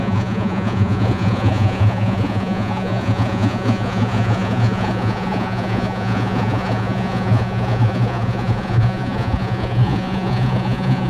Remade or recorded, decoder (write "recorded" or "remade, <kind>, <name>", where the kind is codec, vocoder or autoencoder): remade, vocoder, Vocos